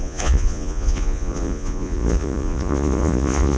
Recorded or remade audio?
remade